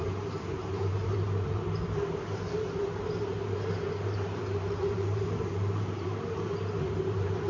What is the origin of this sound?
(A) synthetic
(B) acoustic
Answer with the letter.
A